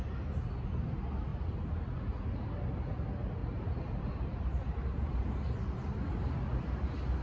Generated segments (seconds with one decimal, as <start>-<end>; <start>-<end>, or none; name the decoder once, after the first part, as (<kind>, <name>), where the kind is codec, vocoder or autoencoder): 1.3-2.0 (vocoder, BigVGAN v2); 3.4-5.3